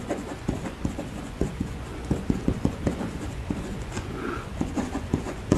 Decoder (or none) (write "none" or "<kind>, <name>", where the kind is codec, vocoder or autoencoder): vocoder, Vocos